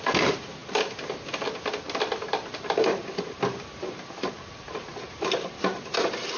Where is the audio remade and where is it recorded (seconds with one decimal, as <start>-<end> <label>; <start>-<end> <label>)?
0.0-6.4 recorded